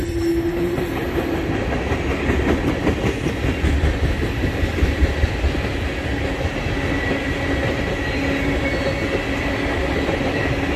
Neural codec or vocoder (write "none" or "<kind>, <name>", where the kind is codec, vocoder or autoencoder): none